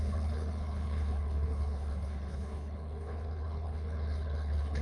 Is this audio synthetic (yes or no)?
yes